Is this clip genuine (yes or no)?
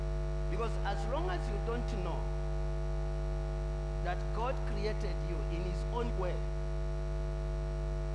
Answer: yes